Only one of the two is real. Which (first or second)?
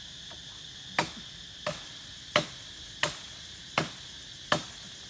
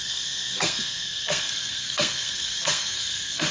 first